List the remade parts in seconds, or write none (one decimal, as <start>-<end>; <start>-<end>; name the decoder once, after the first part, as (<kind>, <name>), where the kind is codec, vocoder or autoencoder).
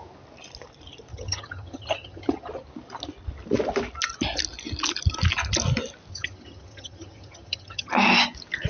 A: 1.1-2.5 (vocoder, HiFi-GAN); 6.1-7.9